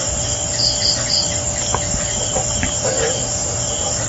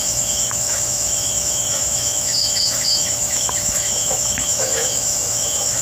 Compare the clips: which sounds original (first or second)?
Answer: first